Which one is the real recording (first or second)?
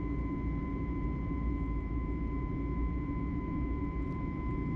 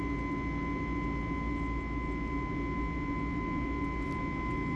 second